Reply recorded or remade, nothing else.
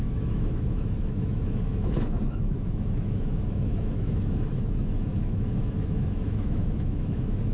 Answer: remade